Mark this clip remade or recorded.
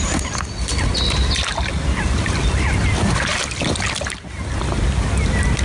recorded